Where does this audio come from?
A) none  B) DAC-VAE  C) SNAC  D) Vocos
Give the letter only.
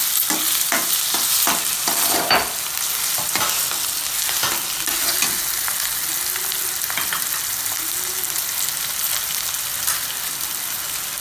A